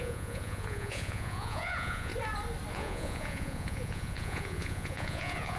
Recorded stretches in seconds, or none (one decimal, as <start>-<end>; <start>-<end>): 2.1-2.7

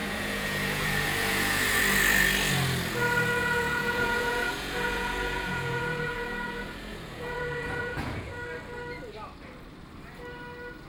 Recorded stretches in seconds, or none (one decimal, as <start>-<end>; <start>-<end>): 1.8-3.4; 8.3-10.9

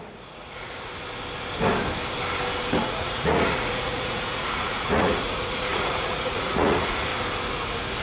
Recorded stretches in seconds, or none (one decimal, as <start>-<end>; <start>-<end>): 0.9-2.8; 7.1-8.0